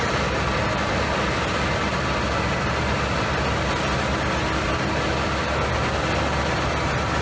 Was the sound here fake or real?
real